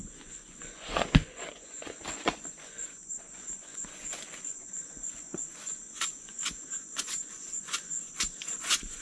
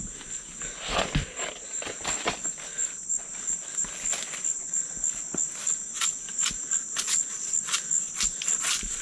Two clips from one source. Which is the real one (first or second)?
second